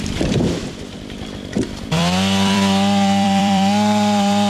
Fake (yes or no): yes